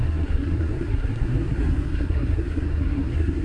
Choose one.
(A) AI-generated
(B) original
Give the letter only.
A